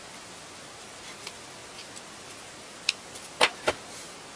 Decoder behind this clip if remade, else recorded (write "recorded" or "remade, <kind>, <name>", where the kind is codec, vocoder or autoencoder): recorded